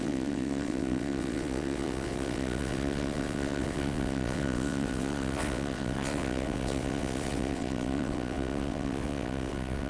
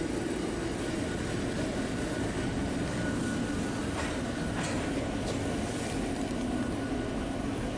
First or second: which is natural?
second